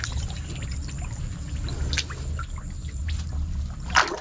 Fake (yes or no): no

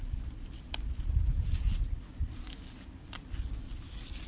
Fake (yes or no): no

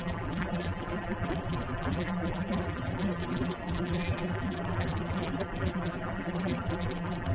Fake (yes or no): yes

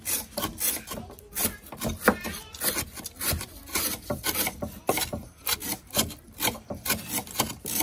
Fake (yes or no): no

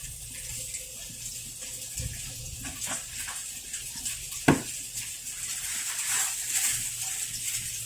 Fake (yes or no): no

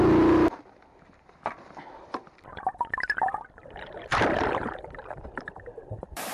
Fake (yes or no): yes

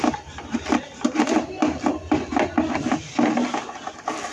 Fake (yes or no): no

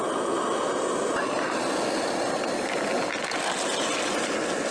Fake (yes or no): no